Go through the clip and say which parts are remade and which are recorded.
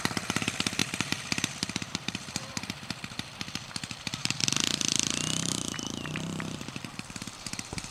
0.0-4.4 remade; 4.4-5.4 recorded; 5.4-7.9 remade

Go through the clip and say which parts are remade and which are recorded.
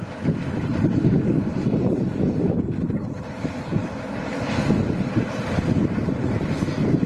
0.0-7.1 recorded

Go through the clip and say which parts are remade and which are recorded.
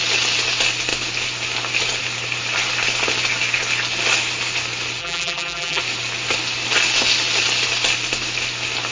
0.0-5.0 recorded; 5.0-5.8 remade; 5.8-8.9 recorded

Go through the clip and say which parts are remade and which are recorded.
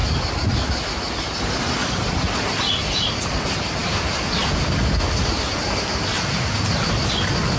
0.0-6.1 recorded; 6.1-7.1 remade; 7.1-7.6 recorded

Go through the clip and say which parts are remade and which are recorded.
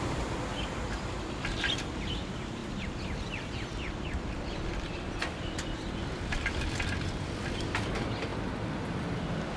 0.0-0.5 remade; 0.5-1.0 recorded; 1.0-9.6 remade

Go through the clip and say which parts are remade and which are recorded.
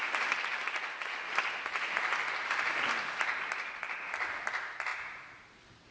0.0-5.9 recorded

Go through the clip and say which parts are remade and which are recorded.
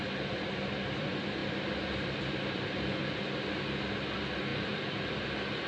0.0-1.4 remade; 1.4-1.9 recorded; 1.9-3.0 remade; 3.0-4.1 recorded; 4.1-5.7 remade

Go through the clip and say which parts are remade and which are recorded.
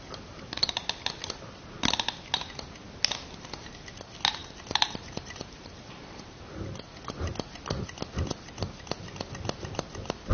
0.0-4.4 recorded; 4.4-7.3 remade; 7.3-10.3 recorded